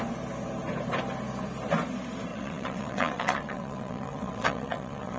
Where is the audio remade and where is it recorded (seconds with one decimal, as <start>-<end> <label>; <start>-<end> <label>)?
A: 0.0-2.3 recorded; 2.3-5.2 remade